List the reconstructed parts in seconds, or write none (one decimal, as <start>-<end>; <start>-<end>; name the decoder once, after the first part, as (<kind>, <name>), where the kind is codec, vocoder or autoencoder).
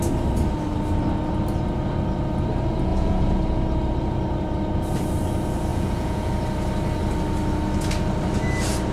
2.9-3.4 (vocoder, Vocos); 5.7-6.3